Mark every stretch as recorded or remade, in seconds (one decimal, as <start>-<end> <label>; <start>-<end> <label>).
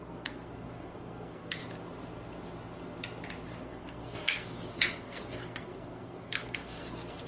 0.0-1.6 remade; 1.6-3.6 recorded; 3.6-7.3 remade